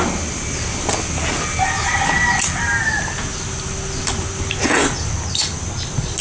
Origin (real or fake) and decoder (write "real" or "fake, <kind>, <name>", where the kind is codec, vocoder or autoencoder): real